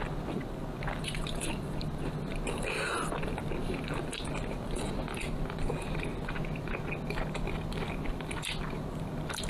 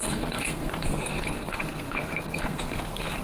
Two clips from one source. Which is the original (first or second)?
first